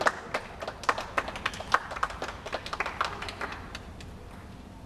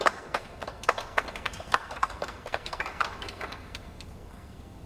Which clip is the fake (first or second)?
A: second